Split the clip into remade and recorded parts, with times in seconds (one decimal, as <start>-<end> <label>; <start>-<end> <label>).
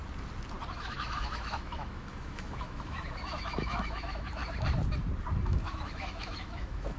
0.0-0.7 recorded; 0.7-4.4 remade; 4.4-5.4 recorded; 5.4-7.0 remade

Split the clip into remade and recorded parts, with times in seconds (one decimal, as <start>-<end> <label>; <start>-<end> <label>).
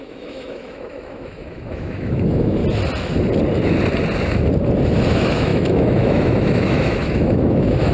0.0-2.6 remade; 2.6-5.1 recorded; 5.1-7.9 remade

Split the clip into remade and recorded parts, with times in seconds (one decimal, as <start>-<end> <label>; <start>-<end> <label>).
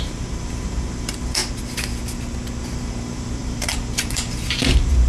0.0-1.4 remade; 1.4-2.6 recorded; 2.6-5.1 remade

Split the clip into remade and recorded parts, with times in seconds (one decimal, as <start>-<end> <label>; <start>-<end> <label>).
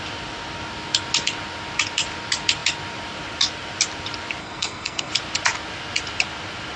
0.0-4.4 recorded; 4.4-5.1 remade; 5.1-6.8 recorded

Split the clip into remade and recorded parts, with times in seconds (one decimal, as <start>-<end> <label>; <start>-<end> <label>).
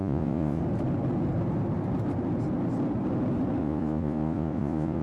0.0-0.6 remade; 0.6-3.6 recorded; 3.6-5.0 remade